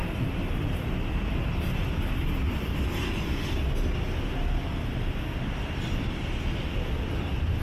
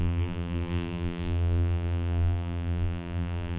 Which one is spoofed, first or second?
second